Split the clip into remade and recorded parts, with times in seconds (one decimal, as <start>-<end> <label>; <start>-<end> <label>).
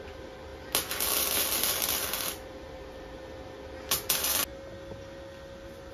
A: 0.0-5.9 recorded